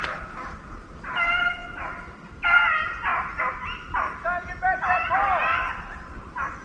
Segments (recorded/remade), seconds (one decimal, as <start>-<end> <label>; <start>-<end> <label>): 0.0-6.6 recorded